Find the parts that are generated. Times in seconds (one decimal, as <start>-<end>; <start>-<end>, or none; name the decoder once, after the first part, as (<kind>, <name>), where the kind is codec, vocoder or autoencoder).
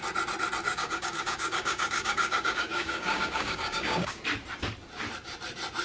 0.7-4.2 (codec, DAC)